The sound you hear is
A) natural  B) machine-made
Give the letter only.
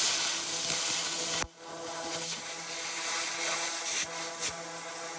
A